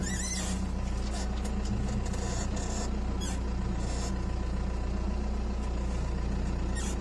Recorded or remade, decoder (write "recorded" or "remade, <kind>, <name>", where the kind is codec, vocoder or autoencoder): recorded